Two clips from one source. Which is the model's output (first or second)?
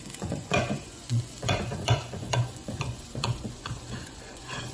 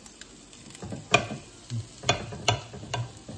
first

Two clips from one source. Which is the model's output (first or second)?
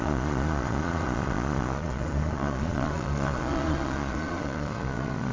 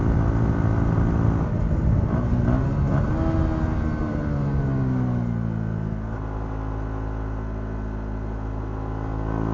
first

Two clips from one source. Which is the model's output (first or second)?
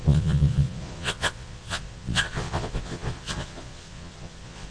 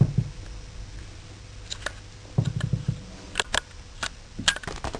first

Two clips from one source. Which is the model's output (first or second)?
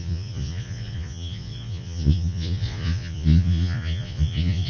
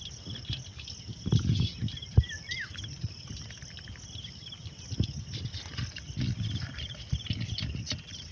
first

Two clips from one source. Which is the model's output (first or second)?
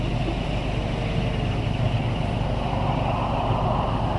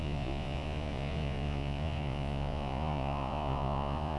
second